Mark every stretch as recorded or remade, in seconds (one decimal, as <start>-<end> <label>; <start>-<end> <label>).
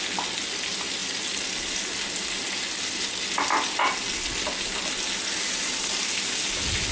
0.0-6.9 recorded